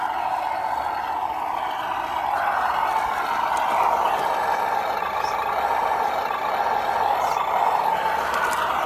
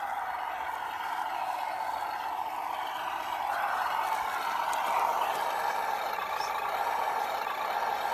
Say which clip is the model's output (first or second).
second